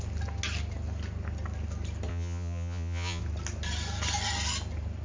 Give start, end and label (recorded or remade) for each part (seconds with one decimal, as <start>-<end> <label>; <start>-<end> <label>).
0.0-2.1 recorded; 2.1-3.2 remade; 3.2-5.0 recorded